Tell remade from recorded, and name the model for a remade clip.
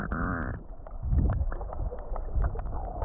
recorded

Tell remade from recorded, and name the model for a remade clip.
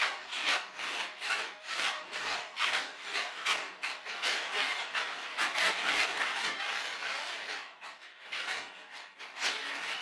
remade, codec, DAC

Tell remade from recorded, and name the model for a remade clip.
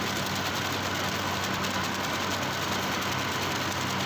recorded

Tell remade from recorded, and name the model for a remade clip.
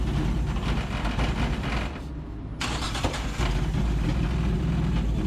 recorded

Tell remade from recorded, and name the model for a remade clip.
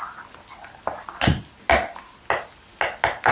recorded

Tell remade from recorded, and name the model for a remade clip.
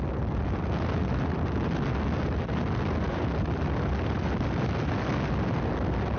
recorded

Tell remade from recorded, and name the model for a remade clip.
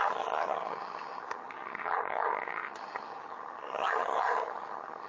remade, vocoder, HiFi-GAN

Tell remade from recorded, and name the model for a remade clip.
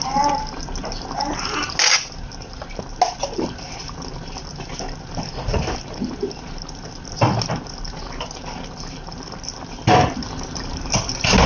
recorded